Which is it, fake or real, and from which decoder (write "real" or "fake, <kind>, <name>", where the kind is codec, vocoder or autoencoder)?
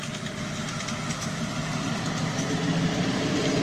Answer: real